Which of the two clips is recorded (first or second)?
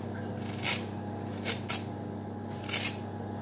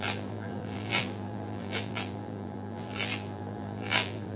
first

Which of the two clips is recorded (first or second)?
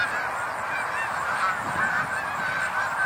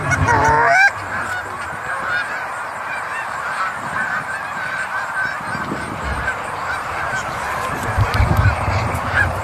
first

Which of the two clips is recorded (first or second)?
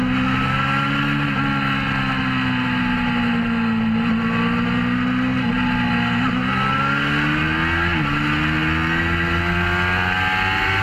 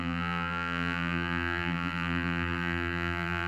first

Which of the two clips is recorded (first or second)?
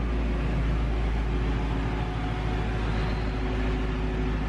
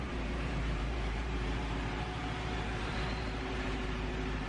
first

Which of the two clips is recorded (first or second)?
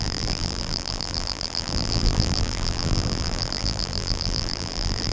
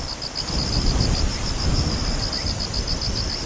second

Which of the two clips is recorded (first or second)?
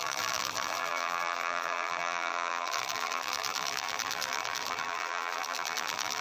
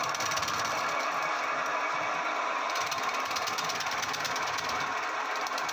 second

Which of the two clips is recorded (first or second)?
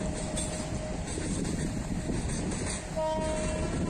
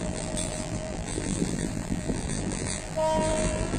first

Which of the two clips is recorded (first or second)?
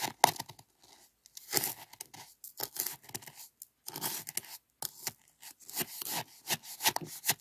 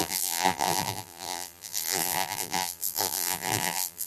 first